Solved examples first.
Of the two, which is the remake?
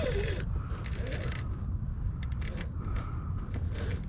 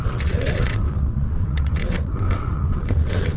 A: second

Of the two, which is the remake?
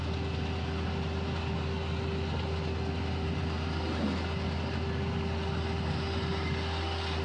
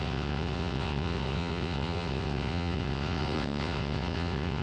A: second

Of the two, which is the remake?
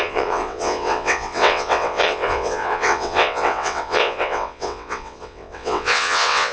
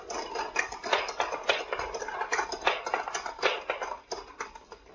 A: first